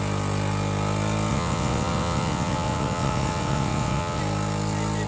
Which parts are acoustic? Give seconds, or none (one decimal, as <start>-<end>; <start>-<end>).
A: 0.0-1.3; 4.2-5.1